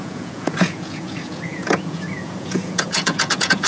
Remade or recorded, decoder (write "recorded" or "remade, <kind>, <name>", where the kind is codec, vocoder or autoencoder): remade, vocoder, Vocos